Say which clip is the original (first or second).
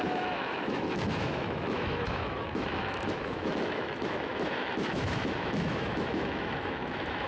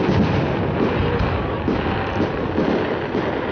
second